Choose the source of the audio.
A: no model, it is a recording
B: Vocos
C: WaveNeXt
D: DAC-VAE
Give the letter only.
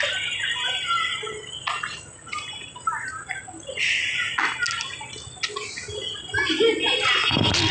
A